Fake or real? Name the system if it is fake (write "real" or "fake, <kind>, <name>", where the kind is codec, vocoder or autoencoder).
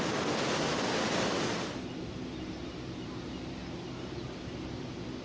real